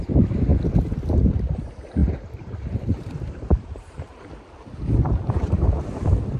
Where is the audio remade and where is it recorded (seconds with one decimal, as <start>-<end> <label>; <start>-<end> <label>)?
0.0-2.0 recorded; 2.0-5.8 remade; 5.8-6.4 recorded